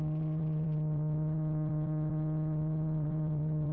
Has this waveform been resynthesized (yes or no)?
yes